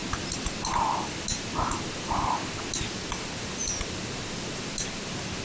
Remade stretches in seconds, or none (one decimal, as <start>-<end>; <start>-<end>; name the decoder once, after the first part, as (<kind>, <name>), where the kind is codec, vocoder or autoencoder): none